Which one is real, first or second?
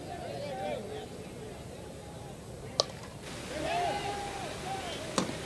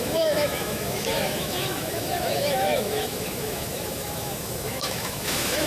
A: first